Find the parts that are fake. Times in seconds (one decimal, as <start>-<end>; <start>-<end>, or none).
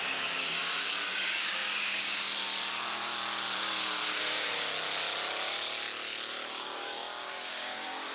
0.0-0.6; 1.2-2.3; 6.5-8.1